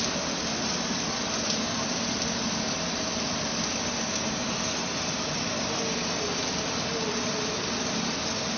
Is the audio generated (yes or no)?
no